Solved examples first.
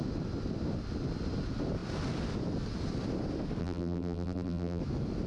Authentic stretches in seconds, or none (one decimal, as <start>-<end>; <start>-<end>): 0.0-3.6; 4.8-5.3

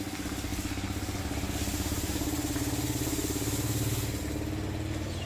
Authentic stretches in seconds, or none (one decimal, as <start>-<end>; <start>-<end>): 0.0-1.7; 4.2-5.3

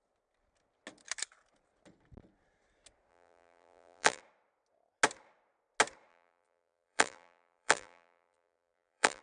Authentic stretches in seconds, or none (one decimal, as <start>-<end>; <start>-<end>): 0.0-3.1; 4.2-6.1